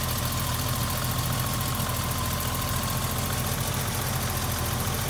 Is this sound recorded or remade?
recorded